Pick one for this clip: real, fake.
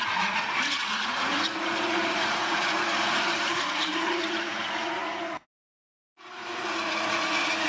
fake